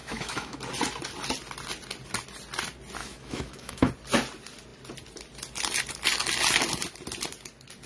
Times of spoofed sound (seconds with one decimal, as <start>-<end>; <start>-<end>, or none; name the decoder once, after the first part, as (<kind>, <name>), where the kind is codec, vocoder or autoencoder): 0.0-0.6 (autoencoder, DAC-VAE); 3.0-3.9